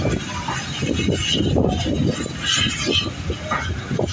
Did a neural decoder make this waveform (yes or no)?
no